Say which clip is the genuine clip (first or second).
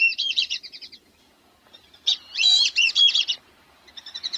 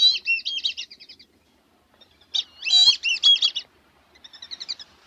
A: second